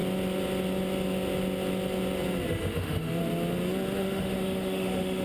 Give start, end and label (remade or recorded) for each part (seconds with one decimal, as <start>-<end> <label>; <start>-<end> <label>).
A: 0.0-2.5 recorded; 2.5-3.2 remade; 3.2-4.0 recorded; 4.0-5.2 remade